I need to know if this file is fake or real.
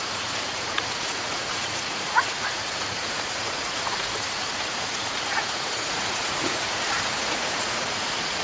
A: fake